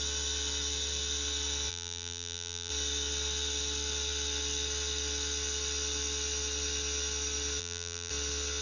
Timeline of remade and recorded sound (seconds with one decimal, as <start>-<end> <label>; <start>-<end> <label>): 0.0-1.7 recorded; 1.7-2.7 remade; 2.7-7.6 recorded; 7.6-8.1 remade; 8.1-8.6 recorded